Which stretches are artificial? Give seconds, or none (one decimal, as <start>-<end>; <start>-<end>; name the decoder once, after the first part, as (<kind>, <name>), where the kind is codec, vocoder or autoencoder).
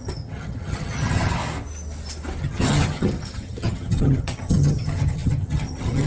0.0-1.4 (vocoder, HiFi-GAN); 2.4-6.1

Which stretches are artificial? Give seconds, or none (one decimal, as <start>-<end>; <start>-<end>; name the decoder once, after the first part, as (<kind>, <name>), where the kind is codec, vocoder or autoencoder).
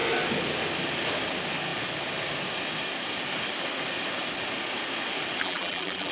5.4-6.1 (vocoder, BigVGAN v2)